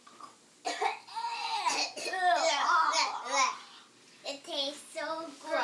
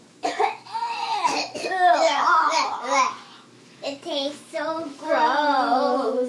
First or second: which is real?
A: first